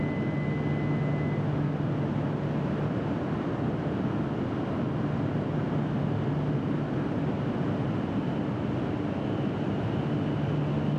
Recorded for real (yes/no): yes